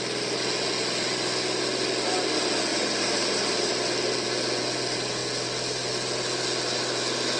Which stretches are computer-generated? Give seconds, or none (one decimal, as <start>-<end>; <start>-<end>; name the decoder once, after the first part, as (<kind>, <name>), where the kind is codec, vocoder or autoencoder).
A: 2.7-3.7 (vocoder, BigVGAN v2)